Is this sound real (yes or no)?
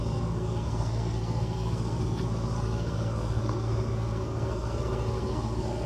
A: no